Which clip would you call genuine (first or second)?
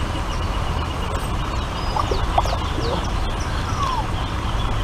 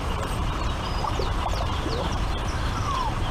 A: first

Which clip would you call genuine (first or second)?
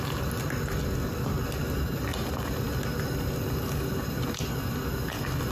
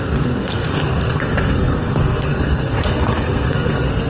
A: first